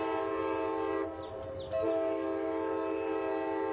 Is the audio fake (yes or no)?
no